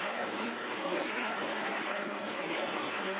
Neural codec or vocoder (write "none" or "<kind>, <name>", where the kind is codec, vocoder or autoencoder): codec, SNAC